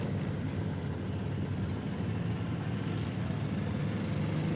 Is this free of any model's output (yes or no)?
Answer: yes